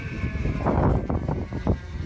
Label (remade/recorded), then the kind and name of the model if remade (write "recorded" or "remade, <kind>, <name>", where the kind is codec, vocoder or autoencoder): remade, vocoder, BigVGAN v2